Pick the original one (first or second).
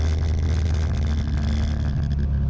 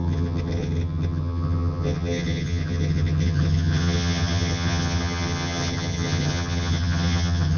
first